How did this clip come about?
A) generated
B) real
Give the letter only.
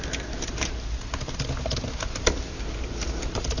B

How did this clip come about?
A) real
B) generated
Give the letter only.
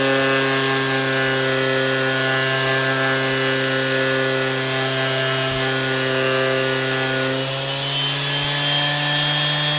A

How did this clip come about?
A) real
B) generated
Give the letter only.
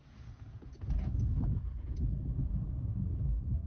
B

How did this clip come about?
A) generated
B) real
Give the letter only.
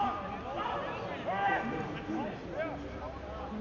B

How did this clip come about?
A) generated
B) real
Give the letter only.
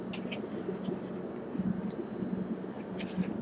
B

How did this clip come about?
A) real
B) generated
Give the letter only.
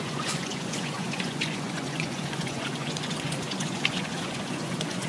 B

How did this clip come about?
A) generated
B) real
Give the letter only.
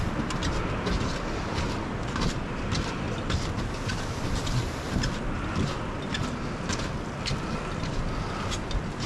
B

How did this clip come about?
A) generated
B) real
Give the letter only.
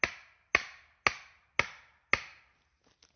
B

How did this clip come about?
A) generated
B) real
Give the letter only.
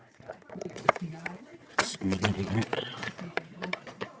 A